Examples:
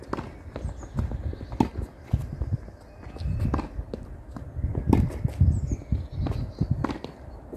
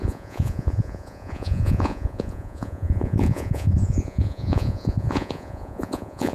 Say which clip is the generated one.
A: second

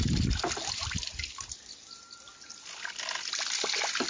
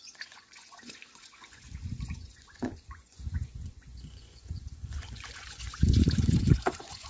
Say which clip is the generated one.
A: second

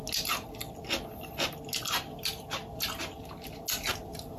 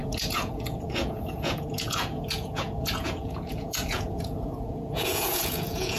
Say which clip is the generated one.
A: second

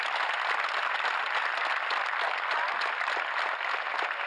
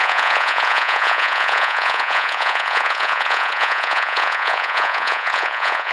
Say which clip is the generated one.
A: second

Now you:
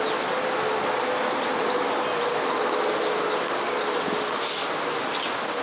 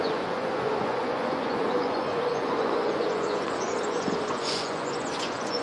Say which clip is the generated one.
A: second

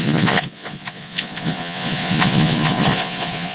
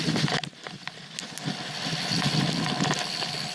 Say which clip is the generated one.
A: first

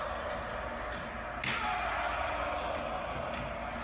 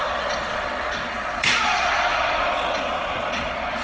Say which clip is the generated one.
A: second